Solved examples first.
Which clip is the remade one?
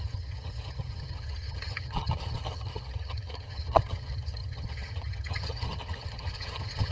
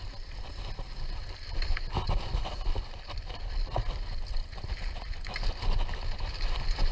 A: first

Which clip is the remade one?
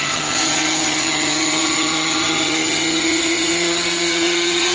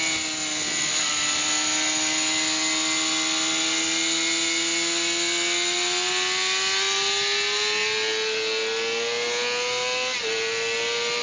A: first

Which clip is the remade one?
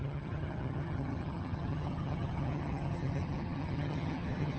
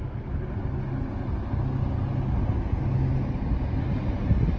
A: first